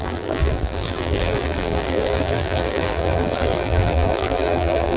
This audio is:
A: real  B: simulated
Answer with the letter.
B